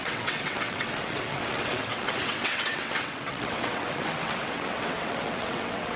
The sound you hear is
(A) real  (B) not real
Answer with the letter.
B